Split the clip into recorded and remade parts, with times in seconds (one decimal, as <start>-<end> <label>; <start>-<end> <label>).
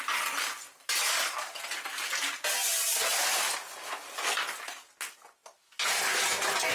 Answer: 0.0-6.7 recorded